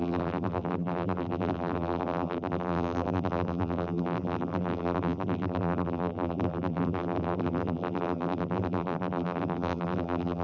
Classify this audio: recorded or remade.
remade